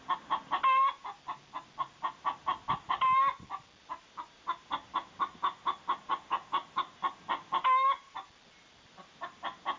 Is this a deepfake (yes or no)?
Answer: no